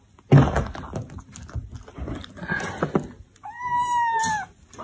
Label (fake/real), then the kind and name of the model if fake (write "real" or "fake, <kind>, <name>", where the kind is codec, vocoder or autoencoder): real